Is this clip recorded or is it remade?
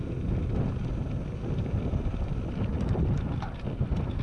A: recorded